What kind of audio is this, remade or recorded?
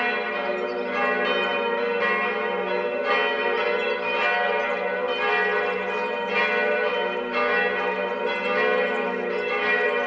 recorded